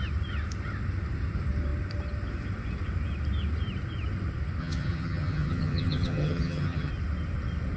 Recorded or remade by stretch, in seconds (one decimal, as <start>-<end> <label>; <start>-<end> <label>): 0.0-4.6 recorded; 4.6-6.9 remade; 6.9-7.8 recorded